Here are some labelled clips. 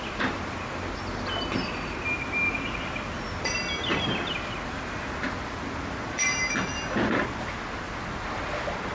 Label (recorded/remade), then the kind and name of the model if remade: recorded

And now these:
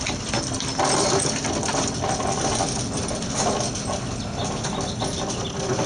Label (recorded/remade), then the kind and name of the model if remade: recorded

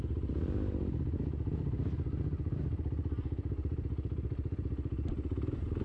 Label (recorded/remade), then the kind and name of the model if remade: recorded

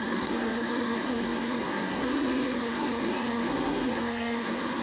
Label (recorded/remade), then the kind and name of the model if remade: remade, codec, SNAC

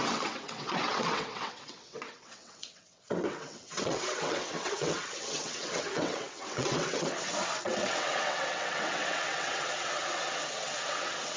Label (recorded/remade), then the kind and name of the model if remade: remade, vocoder, WaveNeXt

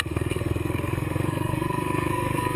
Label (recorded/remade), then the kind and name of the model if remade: remade, codec, SNAC